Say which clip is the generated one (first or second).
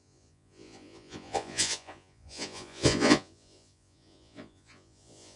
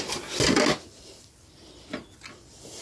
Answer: first